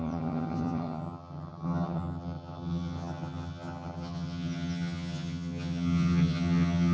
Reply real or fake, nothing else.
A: fake